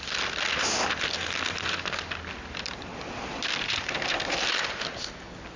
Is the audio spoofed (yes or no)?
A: no